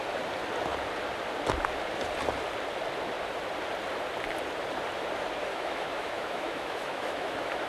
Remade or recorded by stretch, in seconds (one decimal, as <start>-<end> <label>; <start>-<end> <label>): 0.0-5.5 recorded; 5.5-7.7 remade